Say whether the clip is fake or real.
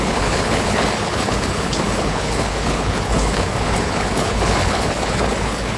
fake